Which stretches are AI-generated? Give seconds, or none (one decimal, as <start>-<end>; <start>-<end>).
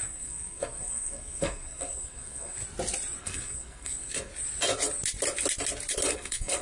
0.0-2.6; 3.2-4.3; 6.1-6.6